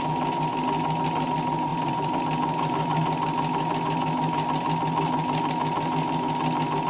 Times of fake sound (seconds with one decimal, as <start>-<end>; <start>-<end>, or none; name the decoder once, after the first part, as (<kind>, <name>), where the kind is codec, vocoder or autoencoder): 1.7-2.2 (vocoder, BigVGAN v2)